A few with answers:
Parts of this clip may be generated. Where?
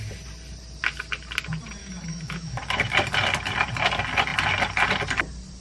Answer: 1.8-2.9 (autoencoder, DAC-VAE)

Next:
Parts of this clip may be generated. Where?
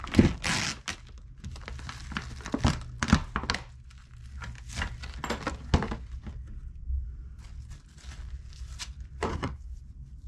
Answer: 9.3-9.8 (codec, SNAC)